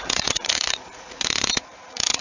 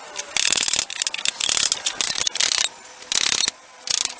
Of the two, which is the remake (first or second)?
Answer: first